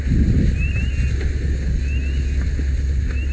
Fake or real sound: real